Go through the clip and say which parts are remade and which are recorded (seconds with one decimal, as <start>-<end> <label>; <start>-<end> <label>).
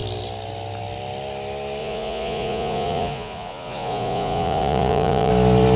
0.0-1.8 recorded; 1.8-5.3 remade; 5.3-5.8 recorded